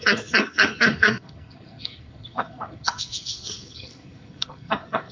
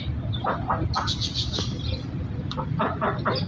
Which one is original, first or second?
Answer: second